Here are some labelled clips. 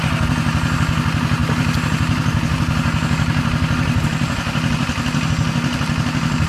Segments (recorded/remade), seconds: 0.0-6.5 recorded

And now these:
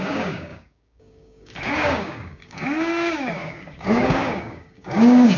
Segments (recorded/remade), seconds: 0.0-5.4 remade

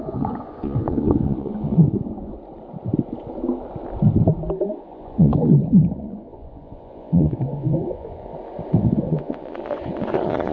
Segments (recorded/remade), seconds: 0.0-2.3 remade; 2.3-4.8 recorded; 4.8-8.3 remade; 8.3-8.8 recorded; 8.8-10.5 remade

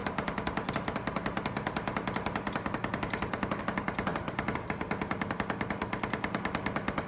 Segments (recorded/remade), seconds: 0.0-4.1 recorded; 4.1-5.1 remade; 5.1-7.1 recorded

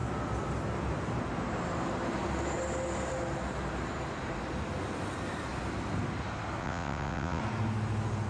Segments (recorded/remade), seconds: 0.0-6.6 recorded; 6.6-7.4 remade; 7.4-8.3 recorded

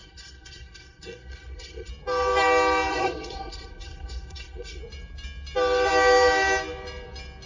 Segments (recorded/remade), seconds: 0.0-1.9 remade; 1.9-2.9 recorded; 2.9-4.8 remade; 4.8-7.5 recorded